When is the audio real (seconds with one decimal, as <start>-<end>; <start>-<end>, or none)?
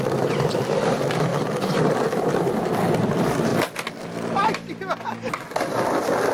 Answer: 3.5-4.0